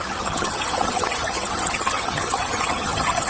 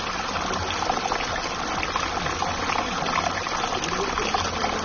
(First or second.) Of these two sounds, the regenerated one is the first